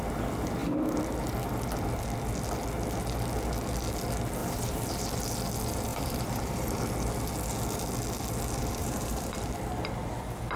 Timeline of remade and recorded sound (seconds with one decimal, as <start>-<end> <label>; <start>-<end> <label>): 0.0-4.4 recorded; 4.4-5.0 remade; 5.0-5.9 recorded; 5.9-6.8 remade; 6.8-8.8 recorded; 8.8-9.3 remade; 9.3-10.6 recorded